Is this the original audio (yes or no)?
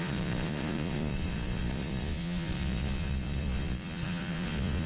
no